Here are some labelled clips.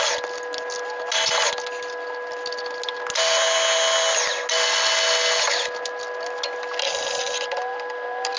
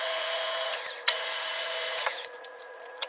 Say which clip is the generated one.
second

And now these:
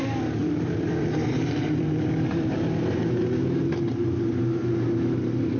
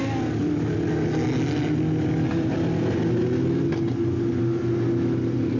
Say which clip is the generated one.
first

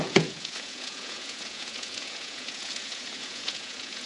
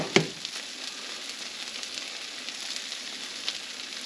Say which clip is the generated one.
first